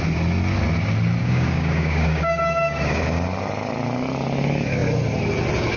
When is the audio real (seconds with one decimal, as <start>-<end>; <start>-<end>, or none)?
0.0-1.2; 3.0-5.8